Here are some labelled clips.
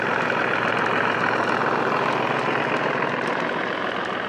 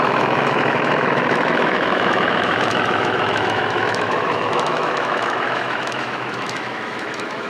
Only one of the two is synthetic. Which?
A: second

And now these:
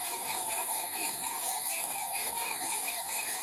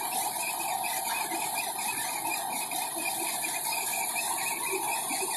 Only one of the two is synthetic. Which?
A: first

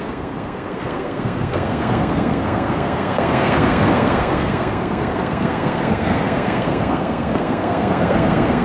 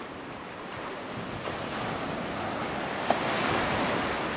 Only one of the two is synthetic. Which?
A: first